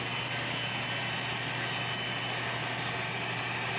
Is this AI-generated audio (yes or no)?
no